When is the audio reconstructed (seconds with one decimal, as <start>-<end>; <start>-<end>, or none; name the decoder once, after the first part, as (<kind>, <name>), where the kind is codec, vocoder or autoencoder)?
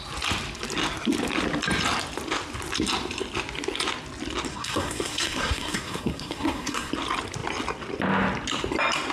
4.5-6.9 (codec, SNAC)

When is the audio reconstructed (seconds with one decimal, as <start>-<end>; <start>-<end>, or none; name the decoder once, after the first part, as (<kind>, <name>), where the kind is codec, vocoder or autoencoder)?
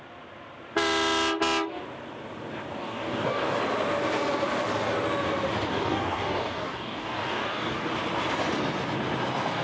2.8-3.6 (codec, DAC); 5.7-7.9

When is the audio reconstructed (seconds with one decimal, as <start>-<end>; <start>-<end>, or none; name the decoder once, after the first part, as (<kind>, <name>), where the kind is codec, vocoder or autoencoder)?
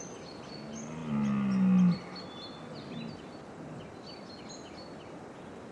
none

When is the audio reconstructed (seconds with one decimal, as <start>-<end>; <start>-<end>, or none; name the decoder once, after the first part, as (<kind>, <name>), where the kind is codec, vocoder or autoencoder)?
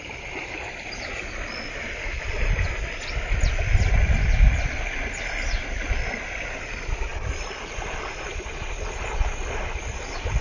none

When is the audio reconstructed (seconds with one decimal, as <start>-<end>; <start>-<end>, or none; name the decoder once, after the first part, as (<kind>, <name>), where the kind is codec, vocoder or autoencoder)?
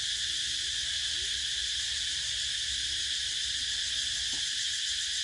none